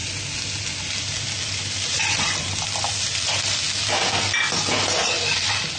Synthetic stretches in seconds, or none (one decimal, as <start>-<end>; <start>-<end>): none